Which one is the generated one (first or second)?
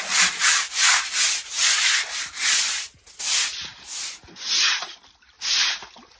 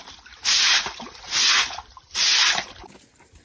second